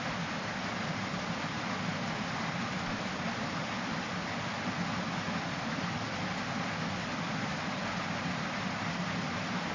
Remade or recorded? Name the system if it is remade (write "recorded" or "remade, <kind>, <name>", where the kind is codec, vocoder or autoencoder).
recorded